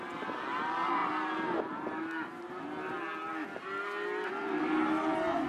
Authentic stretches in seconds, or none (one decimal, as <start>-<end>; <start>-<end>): 0.0-5.5